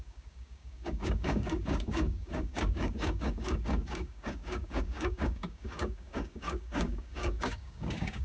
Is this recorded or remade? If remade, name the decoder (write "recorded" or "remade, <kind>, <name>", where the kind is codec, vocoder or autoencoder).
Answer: remade, codec, DAC